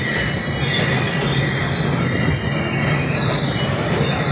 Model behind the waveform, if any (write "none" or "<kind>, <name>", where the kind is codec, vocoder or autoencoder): none